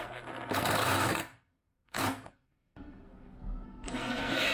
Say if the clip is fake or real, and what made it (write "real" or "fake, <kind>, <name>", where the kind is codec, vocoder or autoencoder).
fake, codec, SNAC